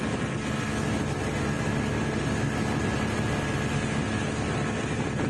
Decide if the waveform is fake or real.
real